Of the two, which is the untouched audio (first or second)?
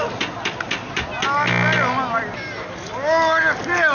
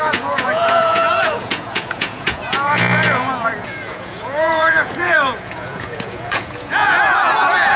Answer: first